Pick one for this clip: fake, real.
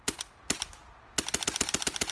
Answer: real